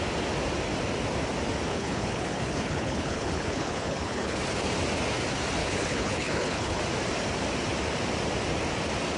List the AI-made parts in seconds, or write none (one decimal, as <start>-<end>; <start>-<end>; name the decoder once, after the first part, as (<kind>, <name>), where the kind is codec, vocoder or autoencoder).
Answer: 1.7-4.4 (codec, HILCodec); 5.6-6.8